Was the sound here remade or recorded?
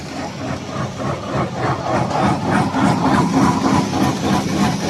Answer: recorded